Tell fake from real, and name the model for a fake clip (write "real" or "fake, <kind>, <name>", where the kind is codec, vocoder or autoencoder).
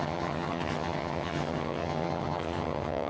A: fake, vocoder, HiFi-GAN